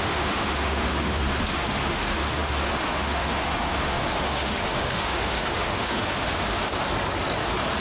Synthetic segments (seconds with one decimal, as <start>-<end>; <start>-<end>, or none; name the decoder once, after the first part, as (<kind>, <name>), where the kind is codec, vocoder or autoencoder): 0.0-6.7 (autoencoder, DAC-VAE)